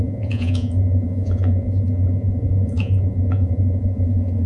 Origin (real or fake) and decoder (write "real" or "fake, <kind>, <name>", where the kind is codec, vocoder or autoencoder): fake, vocoder, Vocos